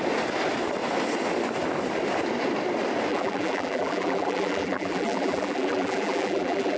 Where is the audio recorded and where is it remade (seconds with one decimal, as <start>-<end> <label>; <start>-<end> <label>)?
0.0-3.1 recorded; 3.1-6.8 remade

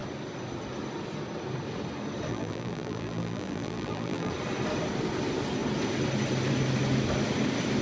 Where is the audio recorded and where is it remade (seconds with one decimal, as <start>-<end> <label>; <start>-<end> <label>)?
0.0-2.3 recorded; 2.3-4.3 remade; 4.3-7.8 recorded

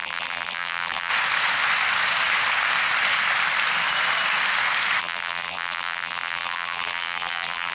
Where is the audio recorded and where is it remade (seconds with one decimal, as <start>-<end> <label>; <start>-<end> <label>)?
0.0-1.1 remade; 1.1-5.0 recorded; 5.0-7.7 remade

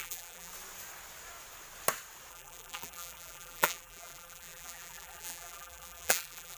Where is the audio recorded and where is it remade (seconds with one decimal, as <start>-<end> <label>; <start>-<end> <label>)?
0.0-0.5 remade; 0.5-2.3 recorded; 2.3-6.6 remade

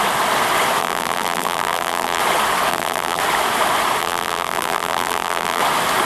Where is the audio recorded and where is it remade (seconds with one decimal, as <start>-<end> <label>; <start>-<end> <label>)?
0.0-0.8 recorded; 0.8-2.2 remade; 2.2-2.7 recorded; 2.7-3.2 remade; 3.2-4.0 recorded; 4.0-5.6 remade; 5.6-6.0 recorded

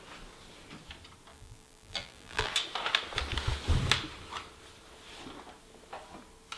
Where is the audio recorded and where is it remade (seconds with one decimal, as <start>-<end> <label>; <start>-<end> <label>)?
0.0-1.3 recorded; 1.3-2.5 remade; 2.5-6.6 recorded

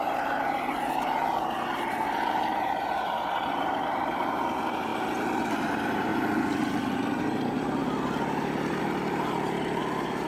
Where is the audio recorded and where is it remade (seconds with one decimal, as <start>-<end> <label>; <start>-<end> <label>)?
0.0-4.9 remade; 4.9-5.5 recorded; 5.5-6.1 remade; 6.1-7.2 recorded; 7.2-7.8 remade; 7.8-8.8 recorded; 8.8-10.3 remade